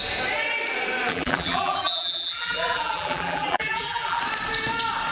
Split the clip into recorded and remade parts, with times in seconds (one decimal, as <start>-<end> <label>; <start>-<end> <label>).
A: 0.0-1.1 recorded; 1.1-4.2 remade; 4.2-5.1 recorded